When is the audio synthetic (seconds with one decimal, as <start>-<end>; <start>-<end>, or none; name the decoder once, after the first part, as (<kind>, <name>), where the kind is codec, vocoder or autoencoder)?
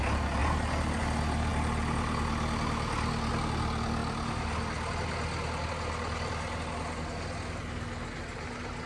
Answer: none